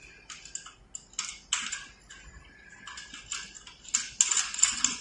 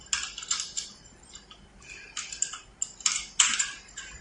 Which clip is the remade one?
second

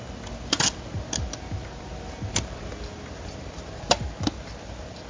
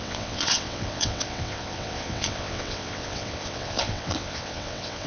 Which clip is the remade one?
second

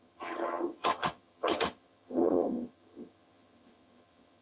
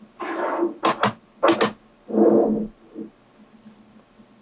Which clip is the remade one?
first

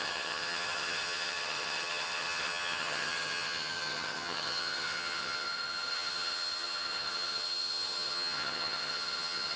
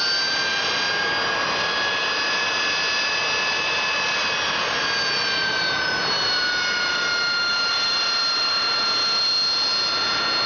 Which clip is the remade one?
first